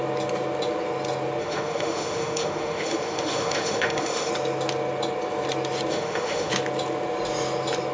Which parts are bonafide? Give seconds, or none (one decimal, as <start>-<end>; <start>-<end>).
0.0-1.4; 4.3-5.9; 6.5-7.9